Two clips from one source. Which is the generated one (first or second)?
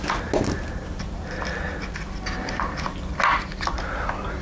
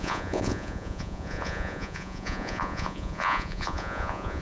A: second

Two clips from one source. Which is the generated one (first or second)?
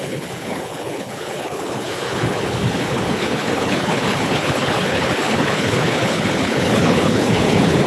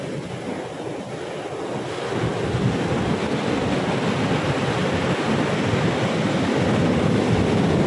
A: first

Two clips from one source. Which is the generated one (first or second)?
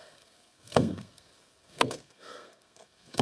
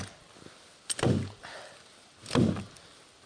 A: first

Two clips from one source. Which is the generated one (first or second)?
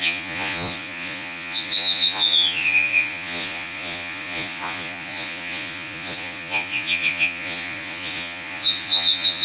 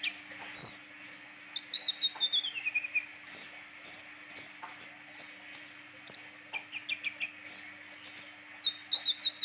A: first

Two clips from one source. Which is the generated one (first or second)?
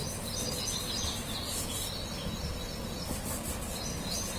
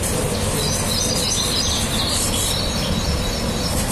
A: second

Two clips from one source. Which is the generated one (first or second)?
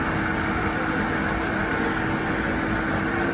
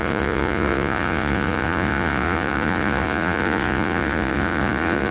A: second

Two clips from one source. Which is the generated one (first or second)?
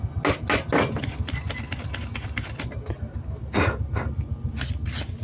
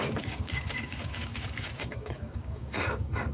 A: second